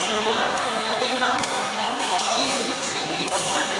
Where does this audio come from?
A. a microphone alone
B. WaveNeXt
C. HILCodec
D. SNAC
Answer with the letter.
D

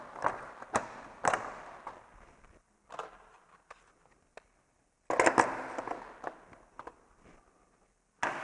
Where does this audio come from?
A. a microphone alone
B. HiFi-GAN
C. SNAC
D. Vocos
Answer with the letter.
A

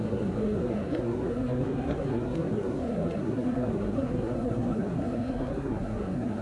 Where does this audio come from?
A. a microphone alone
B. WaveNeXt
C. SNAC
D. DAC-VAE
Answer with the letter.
C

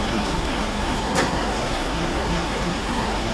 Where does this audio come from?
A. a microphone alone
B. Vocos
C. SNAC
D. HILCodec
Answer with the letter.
C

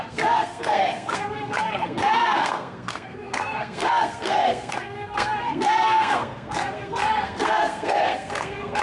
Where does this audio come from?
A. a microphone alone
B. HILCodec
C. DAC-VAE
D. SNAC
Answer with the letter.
D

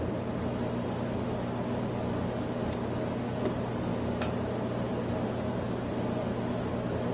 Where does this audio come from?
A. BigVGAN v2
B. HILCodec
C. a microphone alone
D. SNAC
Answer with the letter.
C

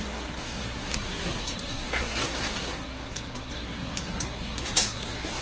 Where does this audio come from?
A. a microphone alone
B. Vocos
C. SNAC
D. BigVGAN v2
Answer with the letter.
C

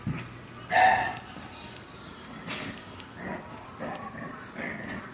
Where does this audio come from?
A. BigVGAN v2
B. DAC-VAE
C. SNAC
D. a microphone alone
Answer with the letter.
D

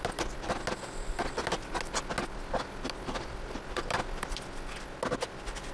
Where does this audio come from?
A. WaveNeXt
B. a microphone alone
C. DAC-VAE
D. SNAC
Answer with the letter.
B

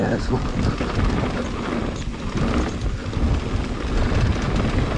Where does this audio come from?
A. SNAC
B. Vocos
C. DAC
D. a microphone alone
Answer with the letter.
D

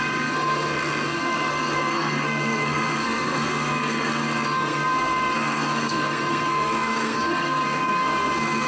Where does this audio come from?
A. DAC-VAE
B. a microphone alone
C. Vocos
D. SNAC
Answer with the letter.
D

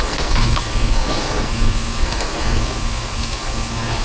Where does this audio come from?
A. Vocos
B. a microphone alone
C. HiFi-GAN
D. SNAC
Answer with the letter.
D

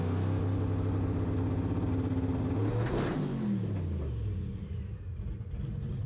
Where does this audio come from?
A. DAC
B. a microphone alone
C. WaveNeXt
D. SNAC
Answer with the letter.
B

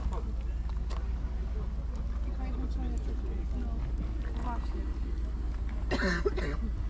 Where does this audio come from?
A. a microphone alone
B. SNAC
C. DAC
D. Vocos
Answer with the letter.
A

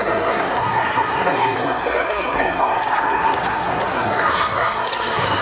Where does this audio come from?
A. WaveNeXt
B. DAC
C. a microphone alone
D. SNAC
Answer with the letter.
D